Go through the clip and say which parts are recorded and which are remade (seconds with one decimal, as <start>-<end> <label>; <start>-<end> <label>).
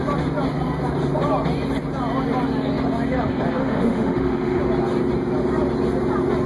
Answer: 0.0-3.6 recorded; 3.6-4.6 remade; 4.6-6.5 recorded